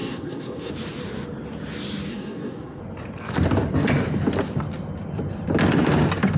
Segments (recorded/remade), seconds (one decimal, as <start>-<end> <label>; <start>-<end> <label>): 0.0-0.7 remade; 0.7-2.1 recorded; 2.1-2.8 remade; 2.8-6.4 recorded